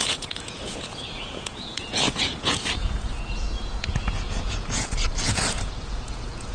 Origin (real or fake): fake